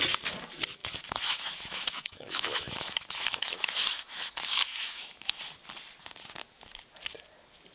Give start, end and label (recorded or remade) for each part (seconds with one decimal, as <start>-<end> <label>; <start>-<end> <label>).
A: 0.0-0.8 recorded; 0.8-5.4 remade; 5.4-7.7 recorded